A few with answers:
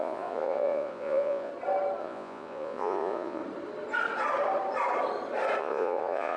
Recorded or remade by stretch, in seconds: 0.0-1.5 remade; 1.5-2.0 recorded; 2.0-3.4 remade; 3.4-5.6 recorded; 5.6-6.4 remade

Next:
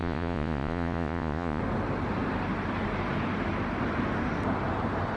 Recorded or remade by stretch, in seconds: 0.0-1.6 remade; 1.6-5.2 recorded

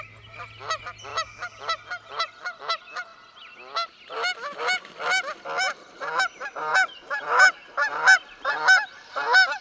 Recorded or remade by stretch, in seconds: 0.0-9.6 recorded

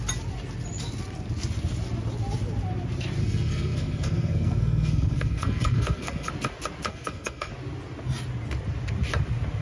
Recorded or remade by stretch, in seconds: 0.0-3.2 recorded; 3.2-6.3 remade; 6.3-6.9 recorded; 6.9-7.5 remade; 7.5-9.6 recorded

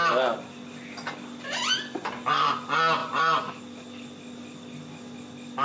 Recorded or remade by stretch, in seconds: 0.0-3.0 recorded; 3.0-3.6 remade; 3.6-5.6 recorded